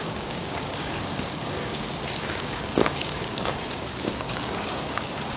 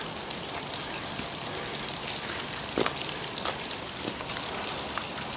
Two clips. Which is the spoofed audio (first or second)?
first